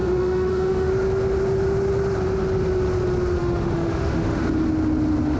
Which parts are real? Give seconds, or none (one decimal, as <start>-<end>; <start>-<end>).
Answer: 0.9-3.4; 4.4-5.4